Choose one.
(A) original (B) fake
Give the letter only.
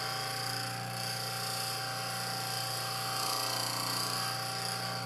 A